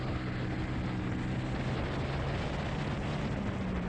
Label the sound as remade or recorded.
recorded